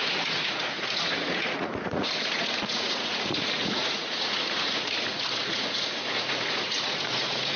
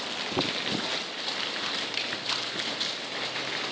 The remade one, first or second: first